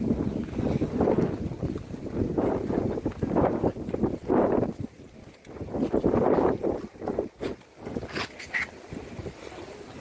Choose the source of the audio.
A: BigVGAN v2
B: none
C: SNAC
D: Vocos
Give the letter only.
B